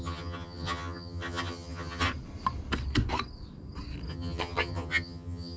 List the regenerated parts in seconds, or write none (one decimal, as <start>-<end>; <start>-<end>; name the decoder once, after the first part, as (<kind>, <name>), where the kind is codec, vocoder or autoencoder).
0.0-2.1 (vocoder, HiFi-GAN); 4.1-5.6